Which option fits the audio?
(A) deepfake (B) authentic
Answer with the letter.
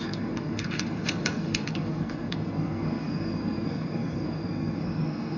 A